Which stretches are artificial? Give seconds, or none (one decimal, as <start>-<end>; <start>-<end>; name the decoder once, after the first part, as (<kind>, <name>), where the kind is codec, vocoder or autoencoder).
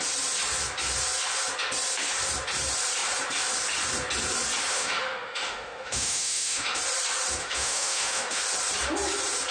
4.7-6.8 (autoencoder, DAC-VAE); 7.4-8.4